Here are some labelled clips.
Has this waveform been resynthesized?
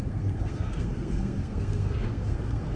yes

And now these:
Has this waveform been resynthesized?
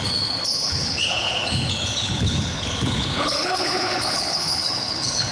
yes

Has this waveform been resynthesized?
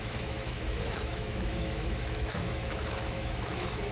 yes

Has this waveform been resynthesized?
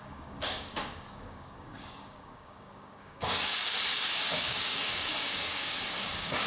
yes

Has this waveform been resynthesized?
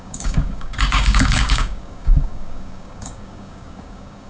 yes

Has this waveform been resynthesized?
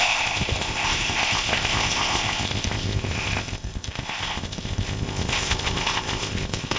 yes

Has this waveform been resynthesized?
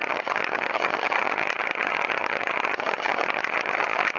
yes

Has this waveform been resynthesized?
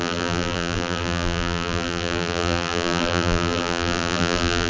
yes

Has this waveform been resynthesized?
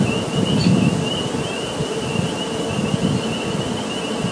no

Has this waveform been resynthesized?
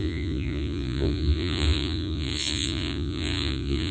yes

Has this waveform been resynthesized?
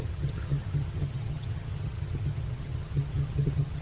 yes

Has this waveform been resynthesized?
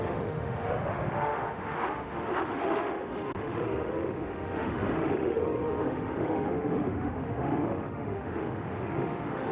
yes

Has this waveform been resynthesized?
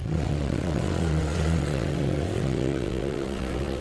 yes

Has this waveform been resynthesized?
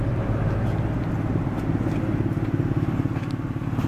no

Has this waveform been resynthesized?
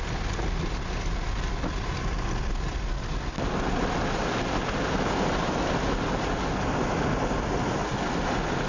no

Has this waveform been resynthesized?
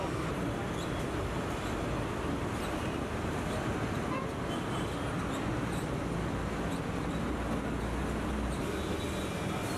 no